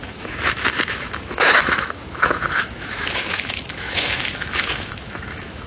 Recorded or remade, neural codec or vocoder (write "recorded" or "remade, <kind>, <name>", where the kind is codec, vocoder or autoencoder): remade, autoencoder, DAC-VAE